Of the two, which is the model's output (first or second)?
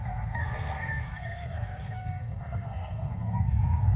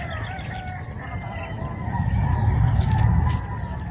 first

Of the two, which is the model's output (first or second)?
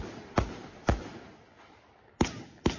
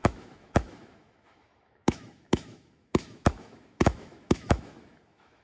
second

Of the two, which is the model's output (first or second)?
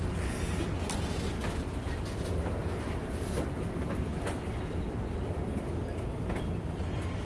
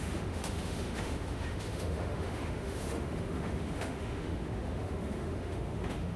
second